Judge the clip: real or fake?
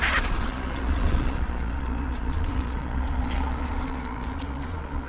fake